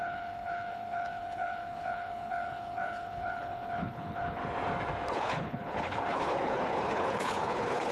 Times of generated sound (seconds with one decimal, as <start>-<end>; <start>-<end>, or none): 0.0-4.4; 5.1-7.9